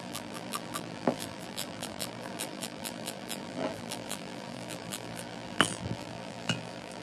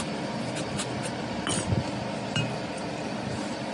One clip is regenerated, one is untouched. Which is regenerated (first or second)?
first